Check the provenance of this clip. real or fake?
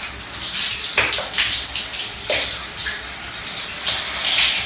real